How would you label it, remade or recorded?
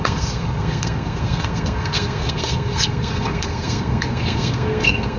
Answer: remade